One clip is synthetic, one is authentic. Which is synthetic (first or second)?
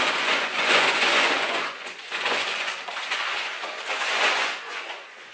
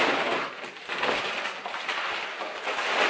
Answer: first